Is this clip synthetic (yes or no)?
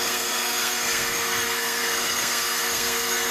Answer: yes